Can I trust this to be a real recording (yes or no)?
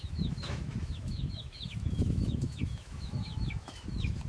no